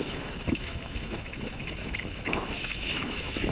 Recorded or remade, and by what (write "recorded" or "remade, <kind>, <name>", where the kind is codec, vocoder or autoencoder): remade, autoencoder, DAC-VAE